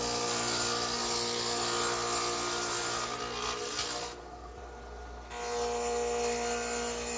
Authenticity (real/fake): real